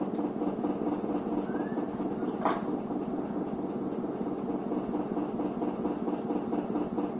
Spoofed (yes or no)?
no